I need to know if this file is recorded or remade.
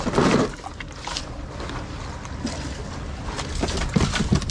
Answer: recorded